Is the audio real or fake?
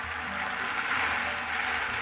real